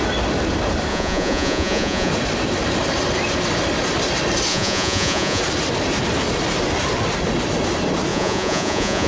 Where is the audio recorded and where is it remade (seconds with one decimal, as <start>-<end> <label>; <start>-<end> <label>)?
0.0-0.9 recorded; 0.9-2.1 remade; 2.1-4.5 recorded; 4.5-5.4 remade; 5.4-8.1 recorded; 8.1-9.1 remade

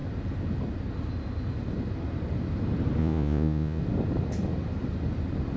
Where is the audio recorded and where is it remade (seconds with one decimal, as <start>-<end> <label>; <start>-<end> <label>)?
0.0-3.0 recorded; 3.0-3.8 remade; 3.8-5.6 recorded